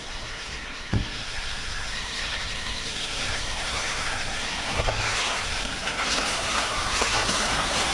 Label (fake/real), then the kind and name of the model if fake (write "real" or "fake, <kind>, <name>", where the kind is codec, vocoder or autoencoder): fake, codec, SNAC